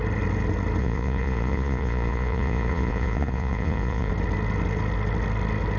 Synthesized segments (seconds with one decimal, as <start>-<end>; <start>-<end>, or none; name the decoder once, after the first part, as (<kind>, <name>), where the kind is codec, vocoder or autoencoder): 0.8-4.1 (vocoder, Vocos)